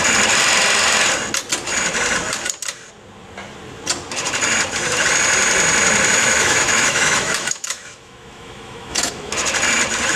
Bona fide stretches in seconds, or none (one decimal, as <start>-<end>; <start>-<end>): 0.0-6.1; 9.3-10.2